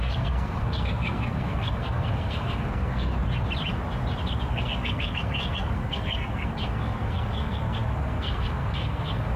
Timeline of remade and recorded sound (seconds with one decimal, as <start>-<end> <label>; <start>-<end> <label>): 0.0-3.1 remade; 3.1-4.5 recorded; 4.5-9.4 remade